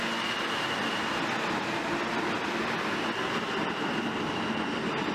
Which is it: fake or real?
real